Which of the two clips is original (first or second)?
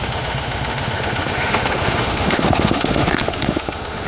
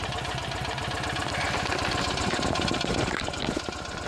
second